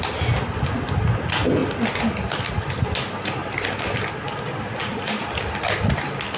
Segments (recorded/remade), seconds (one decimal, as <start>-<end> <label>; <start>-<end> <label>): 0.0-4.8 recorded; 4.8-5.3 remade; 5.3-6.4 recorded